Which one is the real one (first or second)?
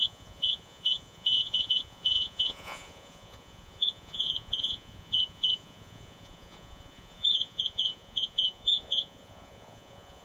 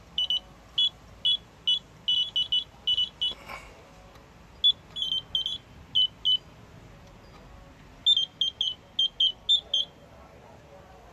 second